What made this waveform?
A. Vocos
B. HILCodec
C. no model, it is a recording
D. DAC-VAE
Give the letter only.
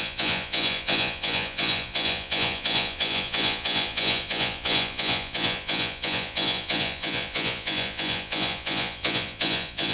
A